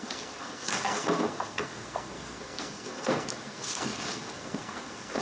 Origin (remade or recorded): remade